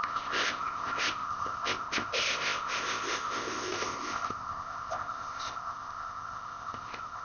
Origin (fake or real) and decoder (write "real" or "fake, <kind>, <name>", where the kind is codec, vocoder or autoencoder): fake, codec, ZipCodec